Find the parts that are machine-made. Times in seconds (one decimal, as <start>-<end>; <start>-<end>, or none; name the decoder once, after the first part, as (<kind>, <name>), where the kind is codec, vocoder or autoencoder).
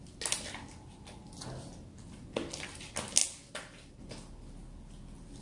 none